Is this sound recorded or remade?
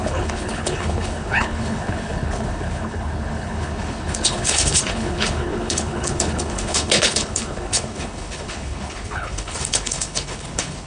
remade